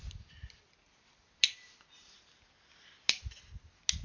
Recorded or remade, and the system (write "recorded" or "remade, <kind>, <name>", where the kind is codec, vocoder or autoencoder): recorded